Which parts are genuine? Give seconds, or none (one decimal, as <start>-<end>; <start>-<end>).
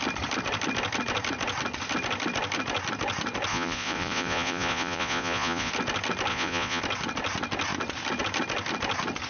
0.0-3.5; 5.7-6.3; 6.8-9.3